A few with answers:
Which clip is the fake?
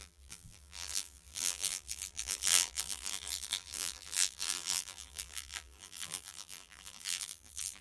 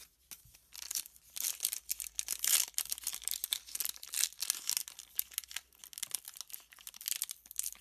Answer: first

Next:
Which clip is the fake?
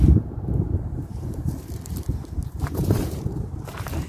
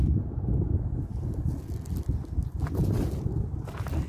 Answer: first